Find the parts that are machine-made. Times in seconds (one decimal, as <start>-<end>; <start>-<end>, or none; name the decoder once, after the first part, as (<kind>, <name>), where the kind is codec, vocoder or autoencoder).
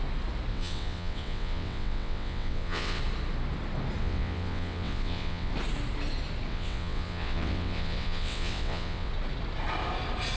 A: 0.5-3.0 (vocoder, WaveNeXt); 4.0-5.5; 6.5-9.1